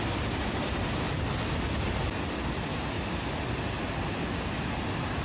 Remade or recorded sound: recorded